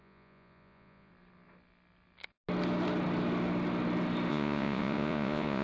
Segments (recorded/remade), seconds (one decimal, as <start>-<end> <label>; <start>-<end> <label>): 0.0-1.1 remade; 1.1-4.3 recorded; 4.3-5.6 remade